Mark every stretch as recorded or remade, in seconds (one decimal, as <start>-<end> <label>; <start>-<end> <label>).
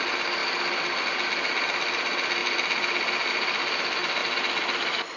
0.0-5.2 recorded